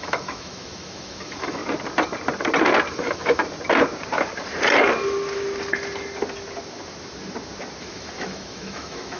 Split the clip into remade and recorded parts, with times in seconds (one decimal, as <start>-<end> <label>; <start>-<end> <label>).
0.0-1.6 remade; 1.6-2.9 recorded; 2.9-3.4 remade; 3.4-7.8 recorded; 7.8-9.2 remade